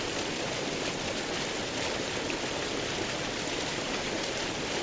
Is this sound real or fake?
real